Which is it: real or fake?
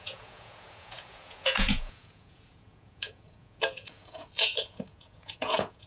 fake